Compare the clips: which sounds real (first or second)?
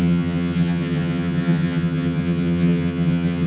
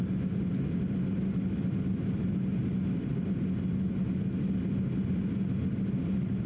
second